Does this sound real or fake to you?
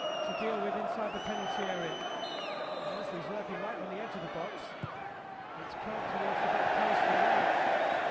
real